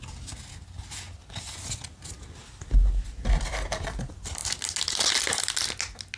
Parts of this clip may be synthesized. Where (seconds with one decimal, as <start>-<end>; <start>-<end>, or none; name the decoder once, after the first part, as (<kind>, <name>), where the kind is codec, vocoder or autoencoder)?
none